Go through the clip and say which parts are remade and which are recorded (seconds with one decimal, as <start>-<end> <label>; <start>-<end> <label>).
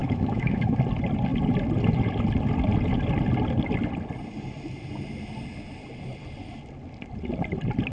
0.0-0.8 remade; 0.8-7.9 recorded